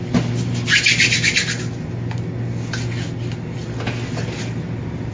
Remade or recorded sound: recorded